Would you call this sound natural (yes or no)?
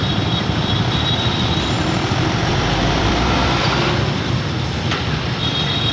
no